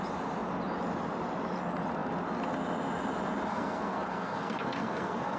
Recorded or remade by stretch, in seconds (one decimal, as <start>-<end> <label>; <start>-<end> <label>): 0.0-3.5 recorded; 3.5-5.4 remade